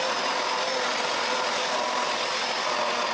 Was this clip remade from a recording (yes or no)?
no